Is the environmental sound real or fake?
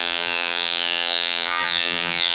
fake